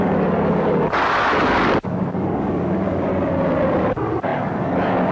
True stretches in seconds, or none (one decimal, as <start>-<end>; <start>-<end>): 3.1-3.8

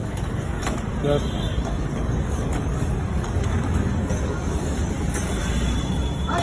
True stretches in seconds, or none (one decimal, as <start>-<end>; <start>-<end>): 0.9-1.5; 4.9-6.4